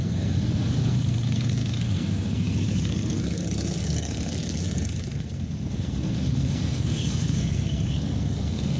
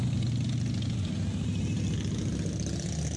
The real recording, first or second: second